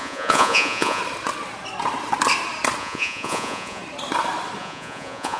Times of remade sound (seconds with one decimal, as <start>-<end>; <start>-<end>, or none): 0.0-1.0; 2.8-3.8; 4.6-5.4